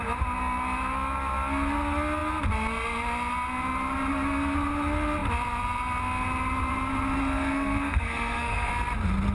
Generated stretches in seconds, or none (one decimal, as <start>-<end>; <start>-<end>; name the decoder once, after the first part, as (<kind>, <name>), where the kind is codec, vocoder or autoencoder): 7.2-8.7 (codec, SNAC)